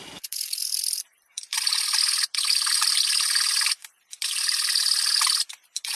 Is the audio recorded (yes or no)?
no